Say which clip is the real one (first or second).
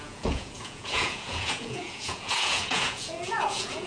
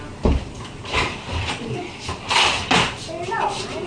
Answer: second